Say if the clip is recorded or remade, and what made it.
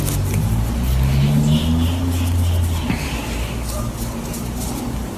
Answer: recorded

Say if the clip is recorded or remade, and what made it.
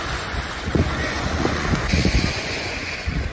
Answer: remade, vocoder, Vocos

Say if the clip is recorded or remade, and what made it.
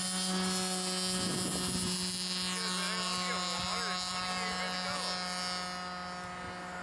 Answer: recorded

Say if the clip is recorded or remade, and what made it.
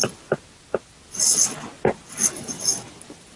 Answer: recorded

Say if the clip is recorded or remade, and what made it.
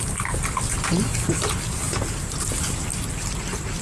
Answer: recorded